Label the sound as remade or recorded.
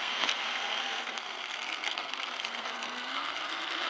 remade